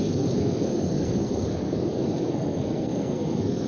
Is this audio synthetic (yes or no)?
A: yes